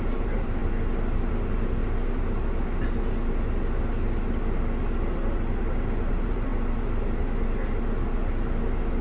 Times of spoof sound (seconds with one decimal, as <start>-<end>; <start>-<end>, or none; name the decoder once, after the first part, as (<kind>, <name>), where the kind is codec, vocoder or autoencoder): 0.0-0.6 (vocoder, BigVGAN v2); 1.3-1.8; 6.1-6.5